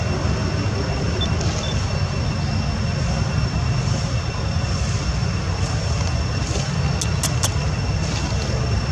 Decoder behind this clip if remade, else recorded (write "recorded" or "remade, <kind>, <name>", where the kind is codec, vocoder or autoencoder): recorded